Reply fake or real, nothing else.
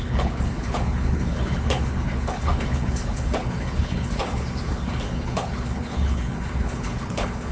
fake